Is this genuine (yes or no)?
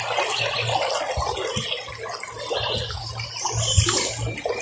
yes